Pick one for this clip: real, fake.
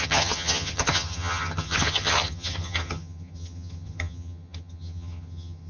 fake